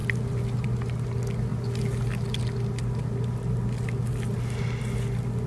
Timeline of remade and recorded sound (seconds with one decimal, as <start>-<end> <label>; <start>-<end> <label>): 0.0-5.5 recorded